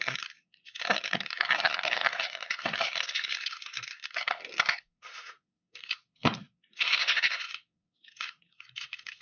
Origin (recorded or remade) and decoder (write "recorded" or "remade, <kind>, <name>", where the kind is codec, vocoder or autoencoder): remade, codec, SNAC